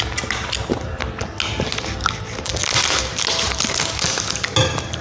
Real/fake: real